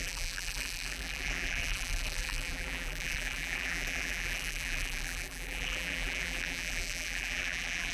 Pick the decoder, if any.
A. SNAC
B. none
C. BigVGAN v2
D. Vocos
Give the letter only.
C